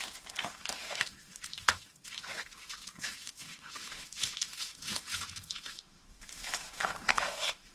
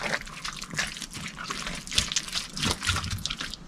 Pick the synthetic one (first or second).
first